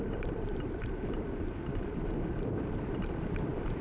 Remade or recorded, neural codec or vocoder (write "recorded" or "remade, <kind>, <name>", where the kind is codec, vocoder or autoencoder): remade, vocoder, BigVGAN v2